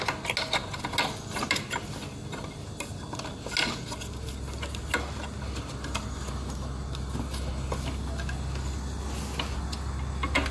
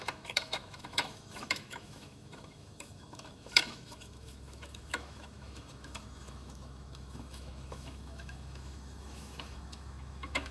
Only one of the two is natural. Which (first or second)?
first